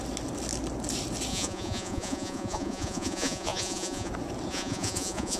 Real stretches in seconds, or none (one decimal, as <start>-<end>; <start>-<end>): 0.0-1.3; 4.1-4.5